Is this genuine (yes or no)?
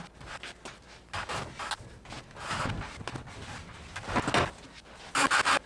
yes